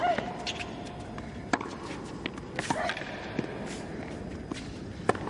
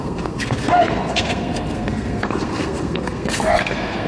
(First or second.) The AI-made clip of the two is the second